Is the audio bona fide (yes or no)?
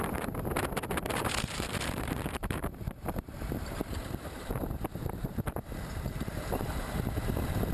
no